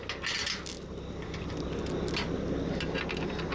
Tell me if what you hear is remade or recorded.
recorded